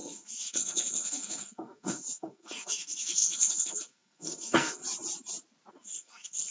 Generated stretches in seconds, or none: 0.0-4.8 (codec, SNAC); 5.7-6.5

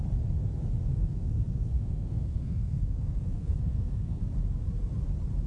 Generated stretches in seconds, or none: 0.9-4.2 (codec, SNAC)

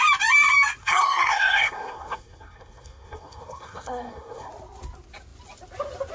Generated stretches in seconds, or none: 0.8-4.5 (codec, SNAC)

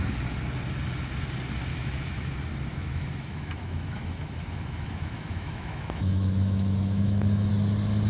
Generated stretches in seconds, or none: 1.7-2.3 (autoencoder, DAC-VAE); 2.7-7.5

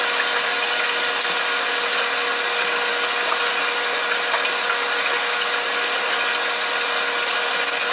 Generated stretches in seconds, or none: none